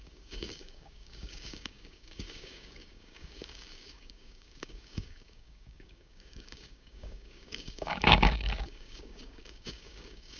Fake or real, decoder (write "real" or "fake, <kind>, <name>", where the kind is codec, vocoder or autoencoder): fake, codec, DAC